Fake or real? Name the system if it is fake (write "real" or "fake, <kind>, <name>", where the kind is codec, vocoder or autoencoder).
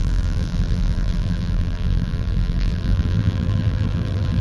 fake, vocoder, BigVGAN v2